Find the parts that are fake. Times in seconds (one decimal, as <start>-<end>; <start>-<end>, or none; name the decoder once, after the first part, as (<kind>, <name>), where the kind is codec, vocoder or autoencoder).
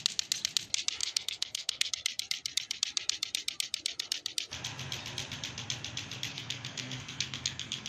1.0-1.9 (codec, SNAC); 6.3-7.9